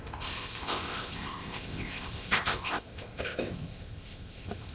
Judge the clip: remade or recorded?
remade